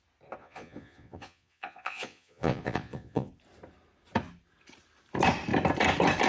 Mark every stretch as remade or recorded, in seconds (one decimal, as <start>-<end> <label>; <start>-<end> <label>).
0.0-0.4 recorded; 0.4-3.3 remade; 3.3-6.3 recorded